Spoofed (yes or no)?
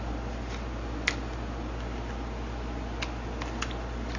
no